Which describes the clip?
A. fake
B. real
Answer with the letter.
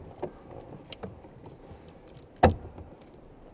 B